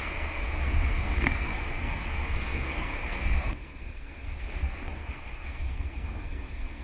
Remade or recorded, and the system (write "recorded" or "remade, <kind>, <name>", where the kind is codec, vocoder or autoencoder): remade, codec, SNAC